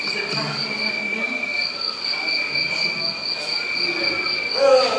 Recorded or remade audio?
recorded